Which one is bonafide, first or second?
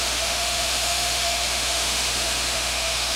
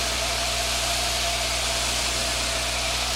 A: second